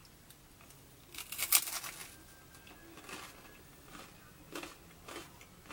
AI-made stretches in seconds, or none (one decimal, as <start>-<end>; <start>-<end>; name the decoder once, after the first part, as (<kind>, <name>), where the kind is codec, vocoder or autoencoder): none